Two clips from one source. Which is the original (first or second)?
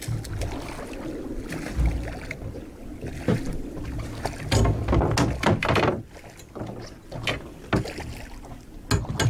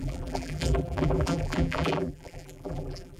first